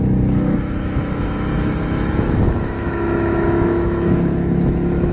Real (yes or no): no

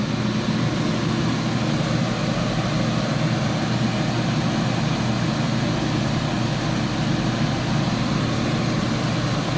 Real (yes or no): yes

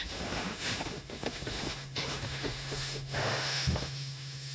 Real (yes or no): no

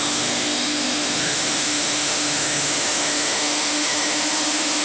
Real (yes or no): no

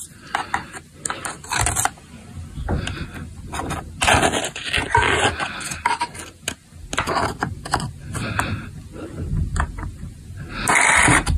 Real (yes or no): yes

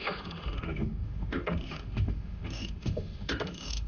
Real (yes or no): no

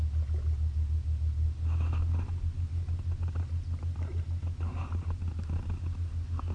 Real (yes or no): yes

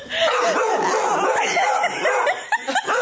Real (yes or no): yes